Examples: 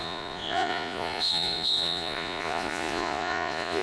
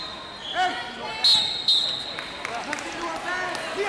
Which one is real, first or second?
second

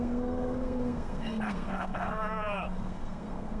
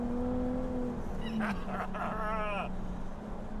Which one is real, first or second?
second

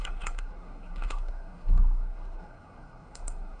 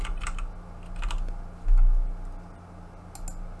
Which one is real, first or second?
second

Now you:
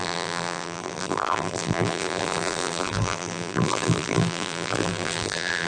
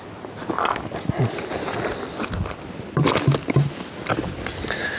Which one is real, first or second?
second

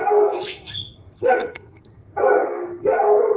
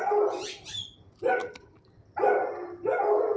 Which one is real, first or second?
second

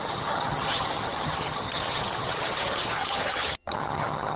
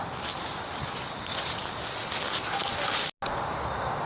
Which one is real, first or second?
second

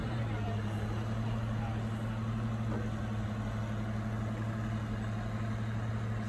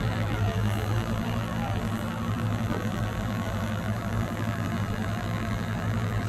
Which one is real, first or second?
first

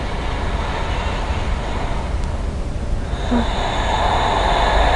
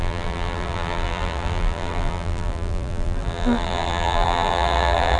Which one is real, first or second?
first